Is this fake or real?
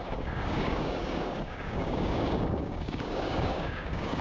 fake